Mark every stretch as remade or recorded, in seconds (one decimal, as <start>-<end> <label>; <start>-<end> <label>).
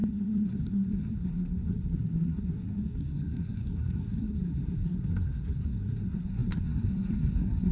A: 0.0-7.7 remade